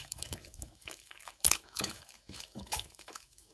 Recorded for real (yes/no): no